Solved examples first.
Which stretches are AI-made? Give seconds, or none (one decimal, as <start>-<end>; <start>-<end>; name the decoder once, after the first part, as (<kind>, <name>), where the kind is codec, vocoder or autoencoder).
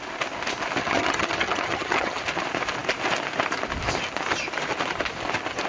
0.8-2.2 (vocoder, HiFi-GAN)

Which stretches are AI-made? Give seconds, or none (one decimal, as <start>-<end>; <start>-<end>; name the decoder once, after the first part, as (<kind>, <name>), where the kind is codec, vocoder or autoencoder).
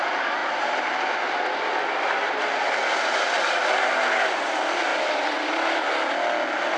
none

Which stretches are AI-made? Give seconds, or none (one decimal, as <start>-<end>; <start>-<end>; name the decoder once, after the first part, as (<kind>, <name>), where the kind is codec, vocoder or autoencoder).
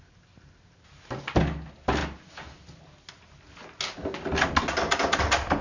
none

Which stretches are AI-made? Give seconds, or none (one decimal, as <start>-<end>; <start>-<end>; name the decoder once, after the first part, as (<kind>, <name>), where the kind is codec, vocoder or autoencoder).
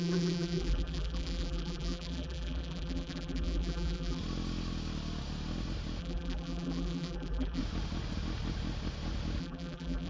0.0-4.2 (vocoder, BigVGAN v2); 6.0-7.6; 9.4-10.1